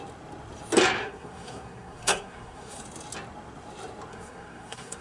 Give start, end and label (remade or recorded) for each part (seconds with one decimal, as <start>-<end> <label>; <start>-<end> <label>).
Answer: 0.0-1.0 recorded; 1.0-2.8 remade; 2.8-4.1 recorded; 4.1-5.0 remade